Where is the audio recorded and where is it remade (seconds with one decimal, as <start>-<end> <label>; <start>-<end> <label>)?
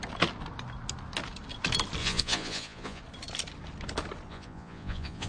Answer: 0.0-2.0 recorded; 2.0-3.0 remade; 3.0-4.3 recorded; 4.3-5.3 remade